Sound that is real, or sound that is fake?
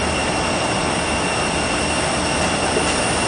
real